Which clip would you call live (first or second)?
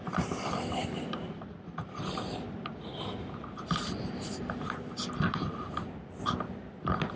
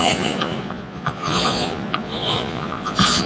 first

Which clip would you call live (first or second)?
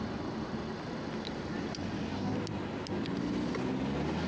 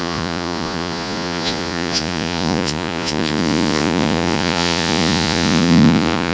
first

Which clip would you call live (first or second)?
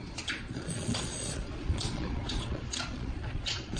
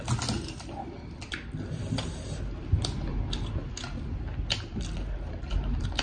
second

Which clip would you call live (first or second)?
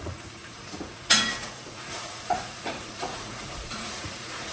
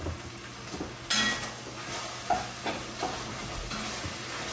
second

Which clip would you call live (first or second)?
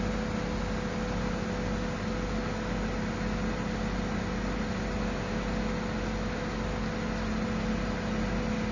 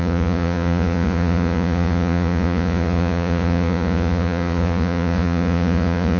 first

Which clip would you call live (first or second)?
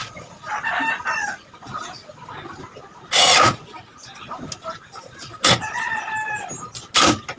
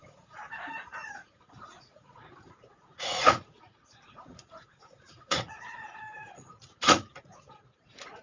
first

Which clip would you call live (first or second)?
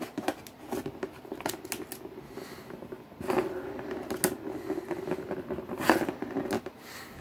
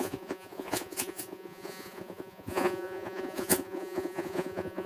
first